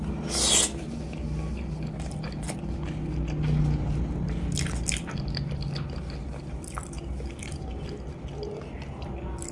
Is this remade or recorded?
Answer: recorded